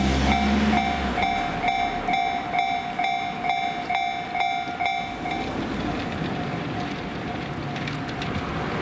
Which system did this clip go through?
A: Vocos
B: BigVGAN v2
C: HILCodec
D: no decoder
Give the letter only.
D